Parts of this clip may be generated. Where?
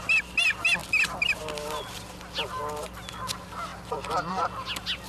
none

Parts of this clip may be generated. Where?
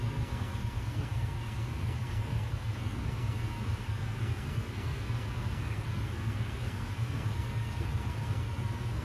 0.0-9.0 (codec, SNAC)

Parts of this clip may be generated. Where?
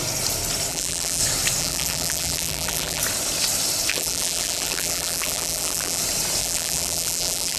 0.7-1.2 (vocoder, BigVGAN v2); 1.6-3.0; 3.9-6.0; 6.4-7.6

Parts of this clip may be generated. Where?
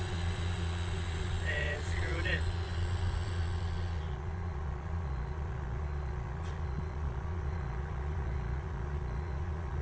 0.0-9.8 (vocoder, Vocos)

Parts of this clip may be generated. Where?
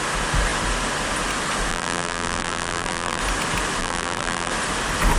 1.7-3.2 (vocoder, BigVGAN v2); 3.8-4.5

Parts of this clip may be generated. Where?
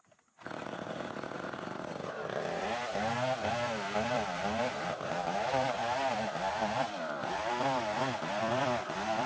0.0-9.3 (vocoder, BigVGAN v2)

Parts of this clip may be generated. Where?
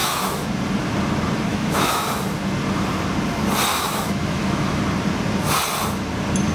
0.0-0.5 (autoencoder, DAC-VAE); 1.5-2.1; 3.7-4.8